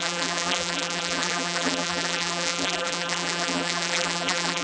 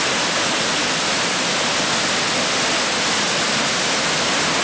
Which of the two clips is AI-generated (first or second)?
first